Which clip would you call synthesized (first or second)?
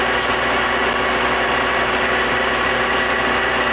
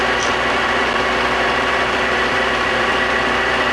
second